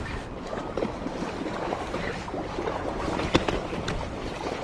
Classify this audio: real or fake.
real